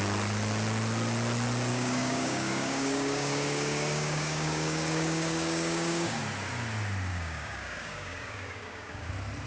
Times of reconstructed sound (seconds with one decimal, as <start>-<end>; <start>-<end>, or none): 1.7-6.2; 7.1-9.1